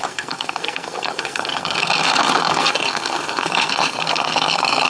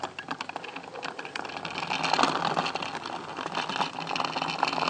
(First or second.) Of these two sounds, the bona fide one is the second